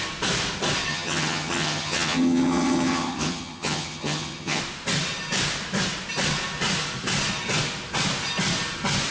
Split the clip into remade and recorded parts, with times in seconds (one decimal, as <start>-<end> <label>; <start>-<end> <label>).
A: 0.0-0.9 recorded; 0.9-4.6 remade; 4.6-9.1 recorded